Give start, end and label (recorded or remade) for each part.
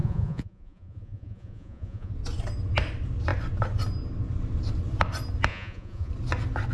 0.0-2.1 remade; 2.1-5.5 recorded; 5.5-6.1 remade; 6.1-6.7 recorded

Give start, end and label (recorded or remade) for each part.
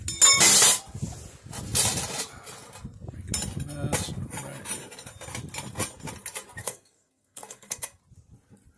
0.0-6.6 recorded; 6.6-8.0 remade; 8.0-8.8 recorded